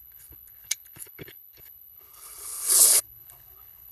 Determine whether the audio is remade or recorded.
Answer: remade